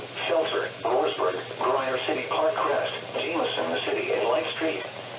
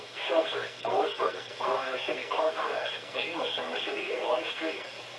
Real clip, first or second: first